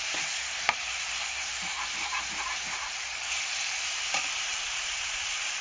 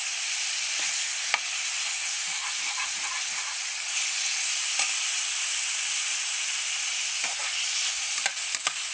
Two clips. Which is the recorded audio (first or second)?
second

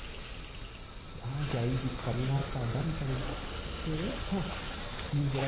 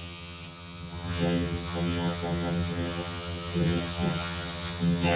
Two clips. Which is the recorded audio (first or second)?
first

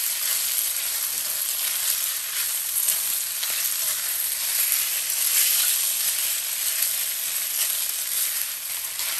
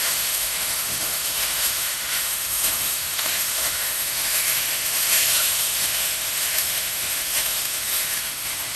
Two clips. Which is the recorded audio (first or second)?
first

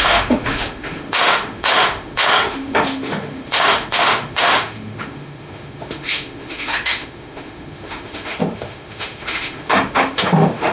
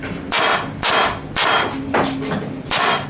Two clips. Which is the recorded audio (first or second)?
second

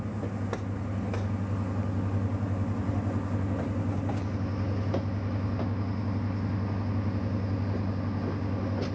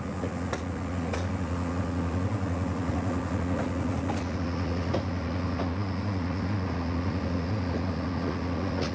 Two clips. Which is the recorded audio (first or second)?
first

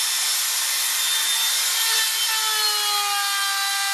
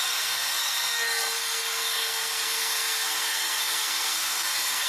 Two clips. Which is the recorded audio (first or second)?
first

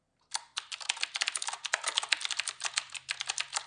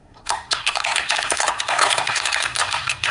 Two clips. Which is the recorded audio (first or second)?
first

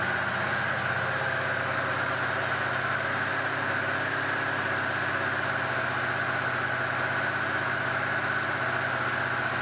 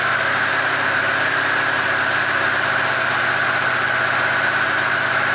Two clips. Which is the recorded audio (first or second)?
first